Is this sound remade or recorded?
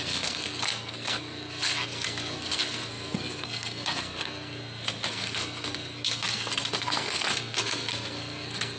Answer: remade